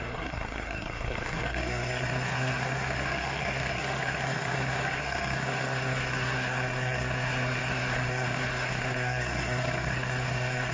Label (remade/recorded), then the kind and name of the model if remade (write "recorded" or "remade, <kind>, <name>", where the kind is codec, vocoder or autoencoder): remade, codec, SNAC